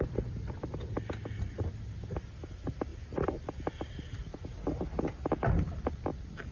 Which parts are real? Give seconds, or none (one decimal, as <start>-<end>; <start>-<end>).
0.0-6.5